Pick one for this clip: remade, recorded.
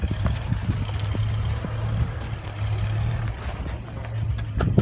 recorded